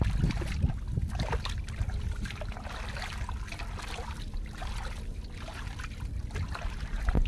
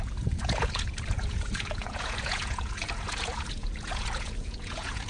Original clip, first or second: first